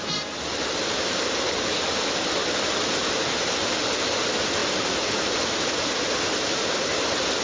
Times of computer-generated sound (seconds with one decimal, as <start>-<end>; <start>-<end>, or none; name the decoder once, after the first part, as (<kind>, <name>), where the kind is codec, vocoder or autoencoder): none